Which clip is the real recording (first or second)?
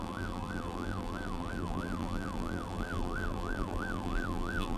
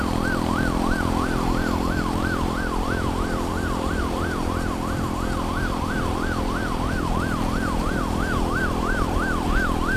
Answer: second